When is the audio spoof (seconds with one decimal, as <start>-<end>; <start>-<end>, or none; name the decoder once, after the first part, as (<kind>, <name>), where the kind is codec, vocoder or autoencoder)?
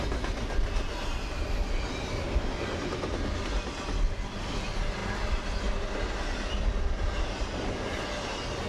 none